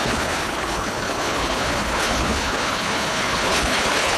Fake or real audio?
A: fake